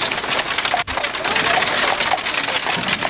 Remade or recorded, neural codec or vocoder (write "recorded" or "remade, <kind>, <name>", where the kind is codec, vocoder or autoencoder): recorded